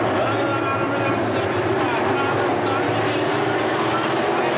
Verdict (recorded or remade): recorded